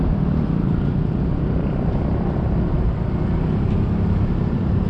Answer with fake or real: real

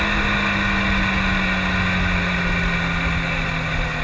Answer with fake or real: real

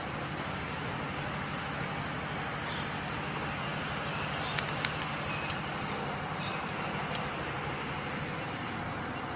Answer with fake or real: real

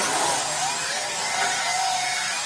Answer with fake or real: real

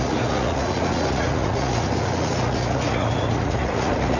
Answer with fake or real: fake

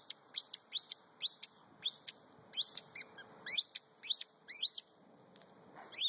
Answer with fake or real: real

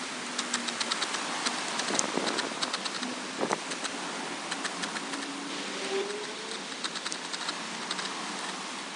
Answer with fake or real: real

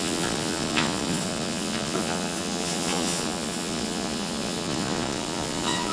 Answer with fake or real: fake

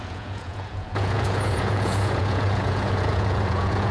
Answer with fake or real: fake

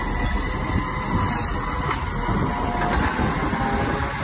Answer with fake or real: real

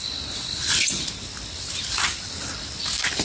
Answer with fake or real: real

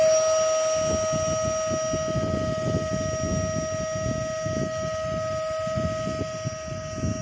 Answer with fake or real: real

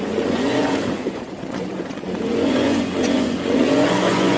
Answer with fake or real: fake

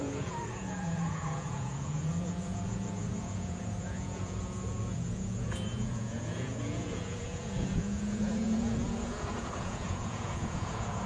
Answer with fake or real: fake